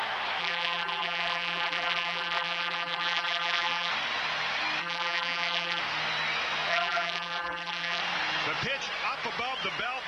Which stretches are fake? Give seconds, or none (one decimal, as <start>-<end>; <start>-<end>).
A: 0.4-3.9; 4.8-5.8; 6.7-8.0